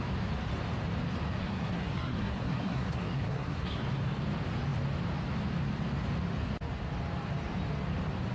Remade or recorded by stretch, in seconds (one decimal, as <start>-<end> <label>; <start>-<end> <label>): 0.0-1.4 recorded; 1.4-3.8 remade; 3.8-8.3 recorded